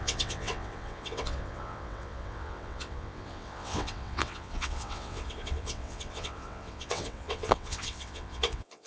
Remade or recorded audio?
remade